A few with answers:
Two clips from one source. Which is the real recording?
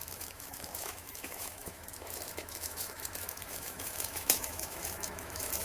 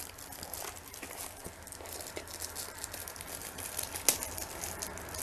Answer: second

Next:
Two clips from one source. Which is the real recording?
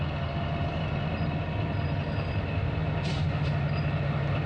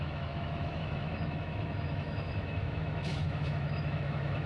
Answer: first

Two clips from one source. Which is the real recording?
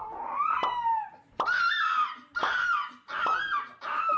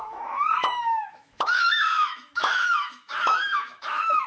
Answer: first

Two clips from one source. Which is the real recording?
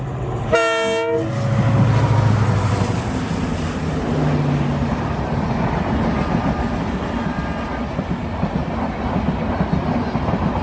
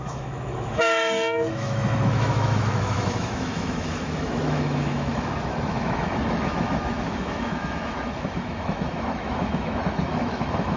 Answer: first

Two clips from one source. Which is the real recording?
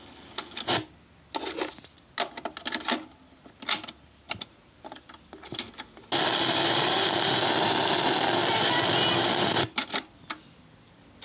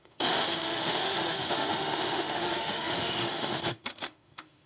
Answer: first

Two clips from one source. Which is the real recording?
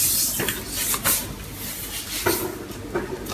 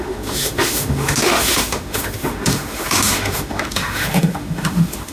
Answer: first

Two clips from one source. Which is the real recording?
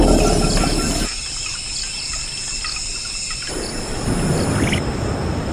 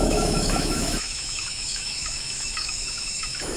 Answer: first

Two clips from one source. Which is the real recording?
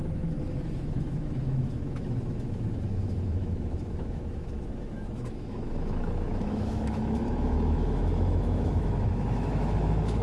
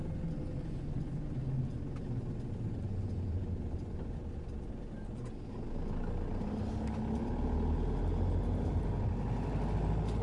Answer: second